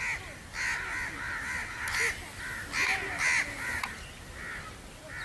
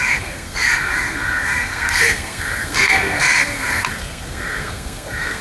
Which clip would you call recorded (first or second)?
first